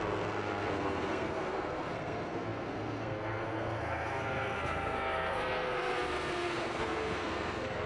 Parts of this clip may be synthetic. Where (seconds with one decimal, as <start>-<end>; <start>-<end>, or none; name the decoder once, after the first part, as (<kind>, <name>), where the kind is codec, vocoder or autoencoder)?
0.0-7.9 (codec, SNAC)